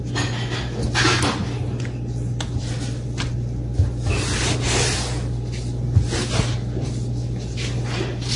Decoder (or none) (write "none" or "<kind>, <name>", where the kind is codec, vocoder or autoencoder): none